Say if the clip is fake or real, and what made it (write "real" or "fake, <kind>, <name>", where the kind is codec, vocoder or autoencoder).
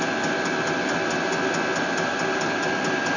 real